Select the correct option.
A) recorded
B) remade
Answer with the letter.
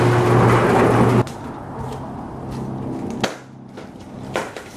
A